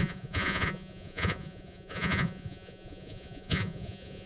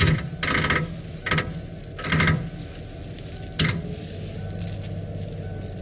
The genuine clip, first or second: second